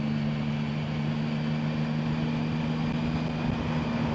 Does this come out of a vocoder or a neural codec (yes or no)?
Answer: no